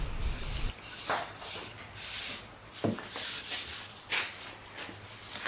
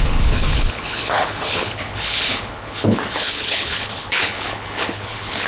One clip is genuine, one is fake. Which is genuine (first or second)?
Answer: first